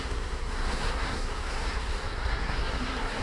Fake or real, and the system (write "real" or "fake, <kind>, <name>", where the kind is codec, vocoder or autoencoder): fake, codec, SNAC